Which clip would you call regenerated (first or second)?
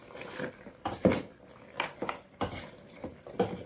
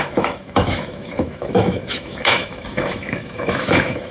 second